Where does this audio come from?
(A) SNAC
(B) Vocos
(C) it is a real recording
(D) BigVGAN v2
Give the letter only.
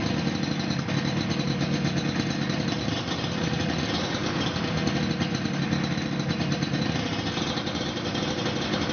C